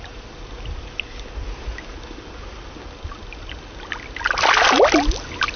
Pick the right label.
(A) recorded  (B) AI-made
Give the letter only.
A